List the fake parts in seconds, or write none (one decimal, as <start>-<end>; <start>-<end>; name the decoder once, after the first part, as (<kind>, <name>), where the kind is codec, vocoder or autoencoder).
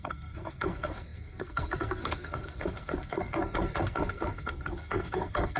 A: 0.0-5.6 (codec, SNAC)